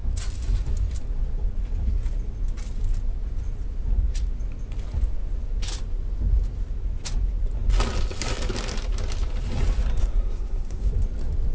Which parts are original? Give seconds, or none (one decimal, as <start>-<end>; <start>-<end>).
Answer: 0.0-10.0; 10.9-11.5

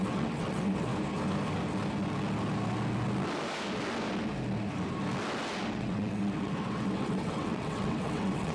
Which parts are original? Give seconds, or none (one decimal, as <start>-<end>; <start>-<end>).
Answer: 0.9-5.7

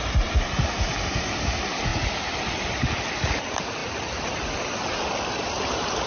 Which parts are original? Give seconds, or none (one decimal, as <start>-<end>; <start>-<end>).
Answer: 0.0-6.1

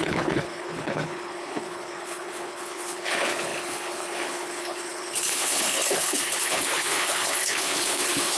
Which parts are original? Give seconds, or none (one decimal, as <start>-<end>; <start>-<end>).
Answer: none